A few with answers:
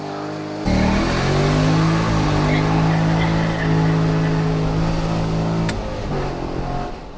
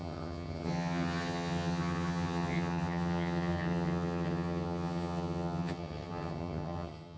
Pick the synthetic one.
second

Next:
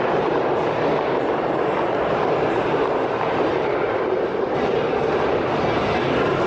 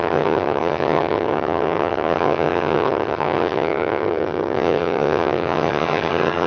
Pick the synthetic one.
second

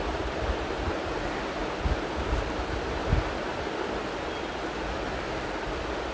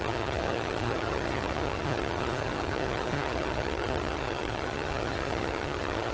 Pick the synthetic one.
second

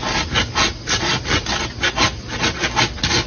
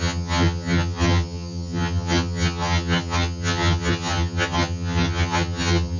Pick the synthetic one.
second